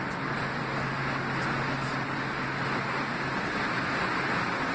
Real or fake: real